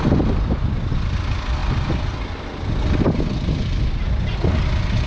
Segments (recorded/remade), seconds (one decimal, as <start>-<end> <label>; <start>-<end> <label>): 0.0-5.1 recorded